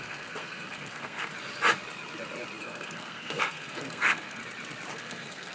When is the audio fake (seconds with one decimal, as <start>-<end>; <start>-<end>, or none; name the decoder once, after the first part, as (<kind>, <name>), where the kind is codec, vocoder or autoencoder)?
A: 0.0-1.3 (codec, SNAC); 2.6-4.4; 4.9-5.5